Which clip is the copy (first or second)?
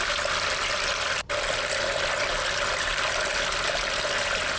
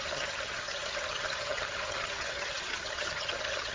second